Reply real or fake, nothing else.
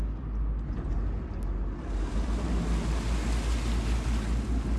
real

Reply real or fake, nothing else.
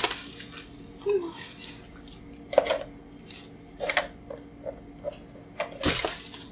real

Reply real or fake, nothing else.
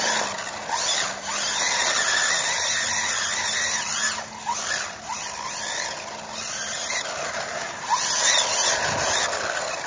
real